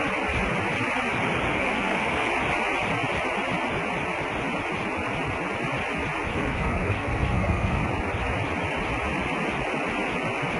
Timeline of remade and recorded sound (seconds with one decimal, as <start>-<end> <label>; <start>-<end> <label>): 0.0-1.5 recorded; 1.5-2.3 remade; 2.3-6.3 recorded; 6.3-7.8 remade; 7.8-10.6 recorded